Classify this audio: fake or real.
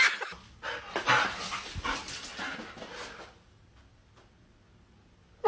real